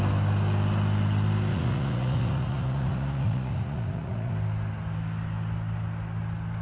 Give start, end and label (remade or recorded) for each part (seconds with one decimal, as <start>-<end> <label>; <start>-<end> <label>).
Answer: 0.0-1.5 recorded; 1.5-4.3 remade; 4.3-6.6 recorded